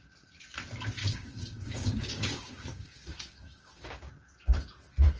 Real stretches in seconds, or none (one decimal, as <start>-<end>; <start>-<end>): 0.0-1.0; 4.1-5.2